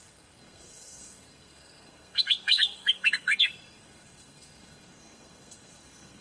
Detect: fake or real fake